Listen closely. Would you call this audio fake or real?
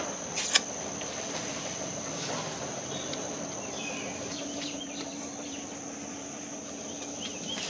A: fake